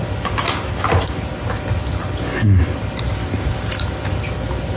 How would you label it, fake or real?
real